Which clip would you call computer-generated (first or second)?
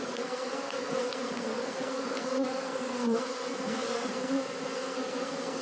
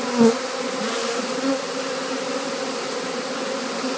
first